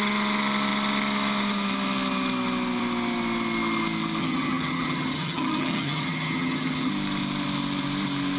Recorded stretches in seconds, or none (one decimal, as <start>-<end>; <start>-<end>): 0.0-4.2; 6.9-8.4